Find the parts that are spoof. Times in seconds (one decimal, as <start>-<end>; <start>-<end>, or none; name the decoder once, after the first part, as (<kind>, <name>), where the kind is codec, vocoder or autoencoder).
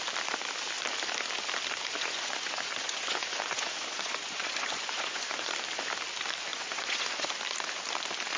1.9-5.5 (vocoder, Vocos); 6.5-7.3